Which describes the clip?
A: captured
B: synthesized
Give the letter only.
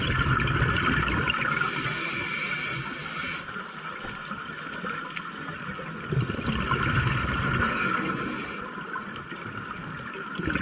A